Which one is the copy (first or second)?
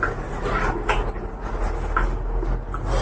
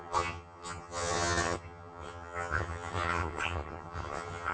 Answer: second